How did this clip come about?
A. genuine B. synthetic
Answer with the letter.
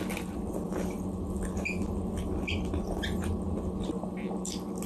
A